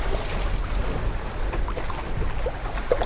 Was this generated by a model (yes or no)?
no